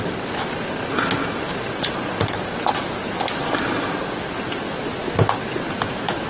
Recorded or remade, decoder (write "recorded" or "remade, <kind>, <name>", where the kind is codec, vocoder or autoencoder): recorded